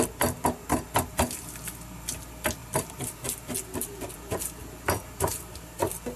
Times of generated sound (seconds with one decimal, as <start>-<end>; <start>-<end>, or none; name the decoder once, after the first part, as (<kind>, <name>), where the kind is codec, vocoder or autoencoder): 2.6-4.6 (vocoder, BigVGAN v2); 5.3-5.8